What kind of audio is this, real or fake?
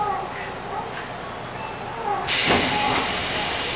real